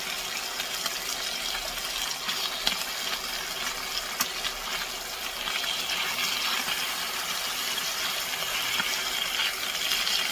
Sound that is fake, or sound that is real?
real